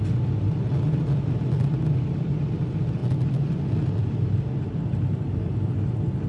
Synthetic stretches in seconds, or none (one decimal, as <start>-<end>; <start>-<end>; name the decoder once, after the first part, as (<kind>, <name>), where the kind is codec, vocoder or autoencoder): none